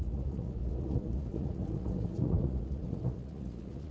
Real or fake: fake